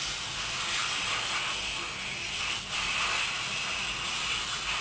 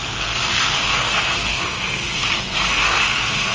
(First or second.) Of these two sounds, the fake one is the second